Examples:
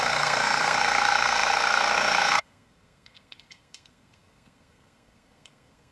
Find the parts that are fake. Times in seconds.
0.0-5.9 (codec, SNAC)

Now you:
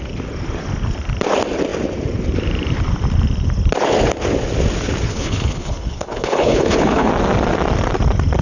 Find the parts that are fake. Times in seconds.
5.1-7.1 (codec, HILCodec)